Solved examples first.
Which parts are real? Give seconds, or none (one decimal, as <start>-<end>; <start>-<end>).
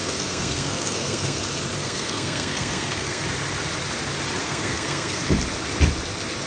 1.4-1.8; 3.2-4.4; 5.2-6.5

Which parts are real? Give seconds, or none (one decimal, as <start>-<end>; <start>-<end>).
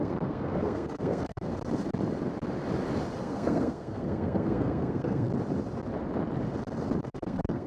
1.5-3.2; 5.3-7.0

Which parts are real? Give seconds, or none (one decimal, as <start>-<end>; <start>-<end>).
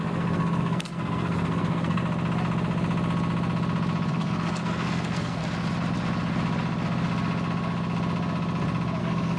2.0-4.1; 5.4-9.0